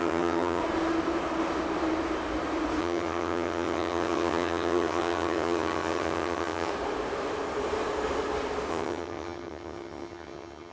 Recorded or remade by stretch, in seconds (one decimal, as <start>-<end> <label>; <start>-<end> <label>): 0.0-0.6 remade; 0.6-2.8 recorded; 2.8-6.7 remade; 6.7-8.7 recorded; 8.7-10.7 remade